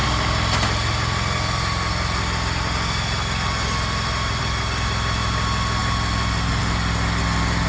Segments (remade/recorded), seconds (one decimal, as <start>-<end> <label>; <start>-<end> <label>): 0.0-7.7 recorded